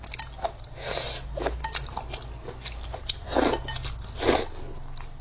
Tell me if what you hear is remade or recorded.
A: recorded